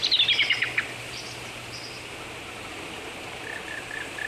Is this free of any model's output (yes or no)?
yes